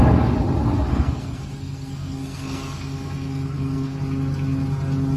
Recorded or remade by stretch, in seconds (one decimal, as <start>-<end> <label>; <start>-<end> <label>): 0.0-0.9 recorded; 0.9-4.0 remade; 4.0-5.2 recorded